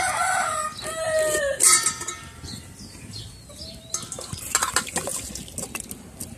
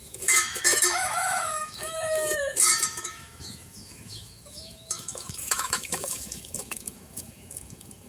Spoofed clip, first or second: second